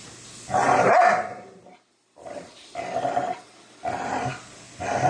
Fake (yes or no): no